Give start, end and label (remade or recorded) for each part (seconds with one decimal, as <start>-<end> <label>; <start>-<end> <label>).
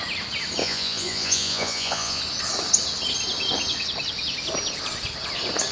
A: 0.0-0.6 recorded; 0.6-2.2 remade; 2.2-5.7 recorded